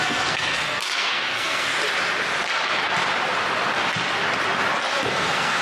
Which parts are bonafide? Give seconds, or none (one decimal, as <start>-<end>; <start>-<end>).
1.7-5.1